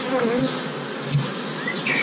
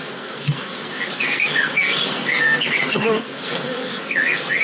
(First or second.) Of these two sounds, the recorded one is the first